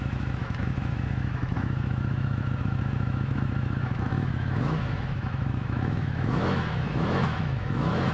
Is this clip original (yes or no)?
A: no